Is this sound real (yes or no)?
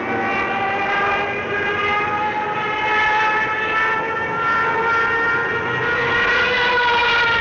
yes